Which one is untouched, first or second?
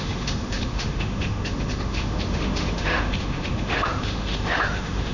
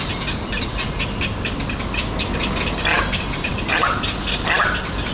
second